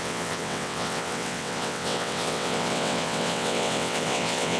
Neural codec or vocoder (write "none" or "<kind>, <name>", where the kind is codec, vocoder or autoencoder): vocoder, WaveNeXt